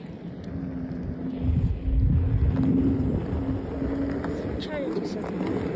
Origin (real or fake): real